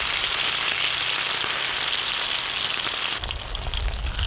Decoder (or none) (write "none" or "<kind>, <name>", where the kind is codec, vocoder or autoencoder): none